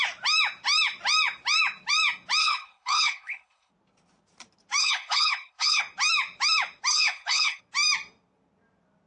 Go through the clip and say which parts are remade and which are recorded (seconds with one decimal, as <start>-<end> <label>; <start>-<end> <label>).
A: 0.0-2.4 recorded; 2.4-3.7 remade; 3.7-4.8 recorded; 4.8-5.8 remade; 5.8-6.9 recorded; 6.9-7.6 remade; 7.6-9.1 recorded